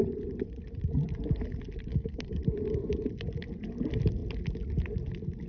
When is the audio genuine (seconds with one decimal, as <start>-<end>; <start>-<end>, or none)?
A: 0.0-1.9; 2.4-5.5